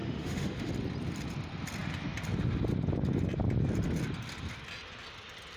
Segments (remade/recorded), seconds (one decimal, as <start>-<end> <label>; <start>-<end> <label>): 0.0-0.7 remade; 0.7-5.6 recorded